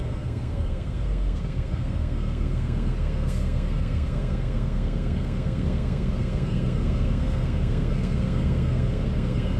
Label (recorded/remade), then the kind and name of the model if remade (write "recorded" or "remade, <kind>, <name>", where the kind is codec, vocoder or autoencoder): remade, codec, SNAC